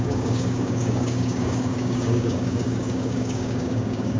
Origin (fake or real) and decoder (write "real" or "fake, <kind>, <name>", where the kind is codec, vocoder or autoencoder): fake, codec, DAC